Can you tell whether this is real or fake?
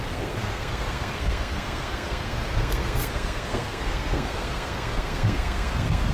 fake